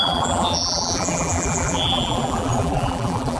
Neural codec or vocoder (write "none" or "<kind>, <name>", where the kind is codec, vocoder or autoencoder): vocoder, BigVGAN v2